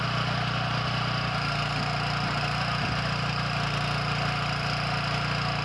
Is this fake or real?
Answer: real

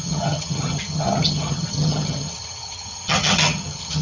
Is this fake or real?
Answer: fake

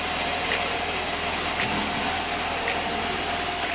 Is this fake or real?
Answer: real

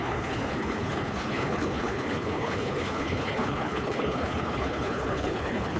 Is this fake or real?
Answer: fake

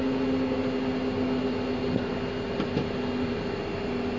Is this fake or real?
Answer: real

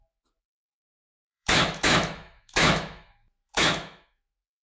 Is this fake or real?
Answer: fake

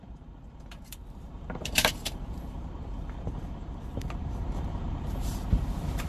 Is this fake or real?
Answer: fake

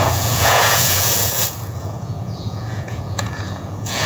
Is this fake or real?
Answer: fake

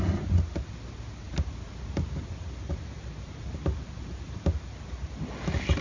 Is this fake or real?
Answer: real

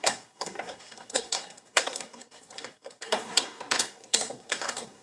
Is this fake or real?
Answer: fake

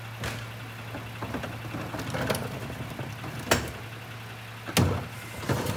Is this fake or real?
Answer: real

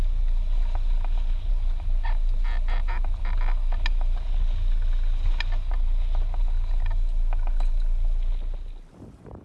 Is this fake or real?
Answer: real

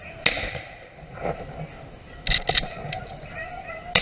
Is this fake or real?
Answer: real